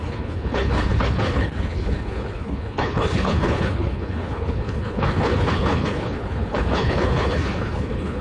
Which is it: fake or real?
fake